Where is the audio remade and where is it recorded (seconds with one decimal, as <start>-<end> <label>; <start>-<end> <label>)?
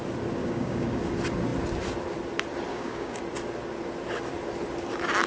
0.0-0.4 recorded; 0.4-1.0 remade; 1.0-2.7 recorded; 2.7-3.2 remade; 3.2-5.3 recorded